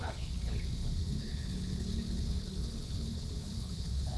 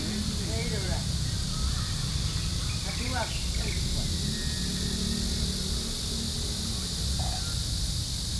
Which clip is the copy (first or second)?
first